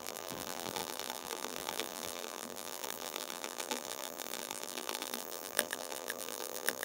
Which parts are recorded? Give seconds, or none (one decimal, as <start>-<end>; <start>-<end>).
none